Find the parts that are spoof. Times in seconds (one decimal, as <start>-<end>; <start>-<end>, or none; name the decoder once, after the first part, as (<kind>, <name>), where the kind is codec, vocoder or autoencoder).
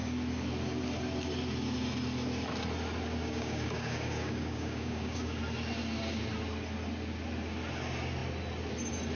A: 3.2-5.4 (codec, DAC)